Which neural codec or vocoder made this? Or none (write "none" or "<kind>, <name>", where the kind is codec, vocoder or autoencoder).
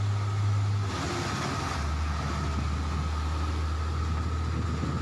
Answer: none